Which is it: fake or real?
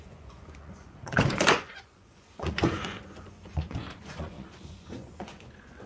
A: fake